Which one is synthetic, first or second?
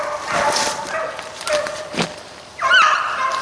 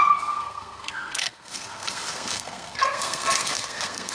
second